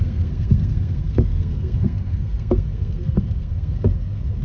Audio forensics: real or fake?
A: fake